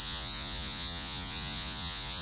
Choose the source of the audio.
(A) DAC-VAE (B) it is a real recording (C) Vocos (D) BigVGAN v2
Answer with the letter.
C